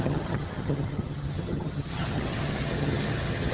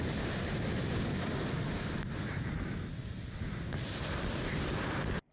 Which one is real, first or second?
second